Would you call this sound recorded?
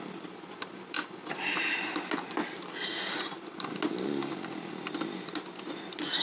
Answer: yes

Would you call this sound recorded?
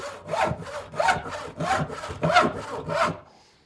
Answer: yes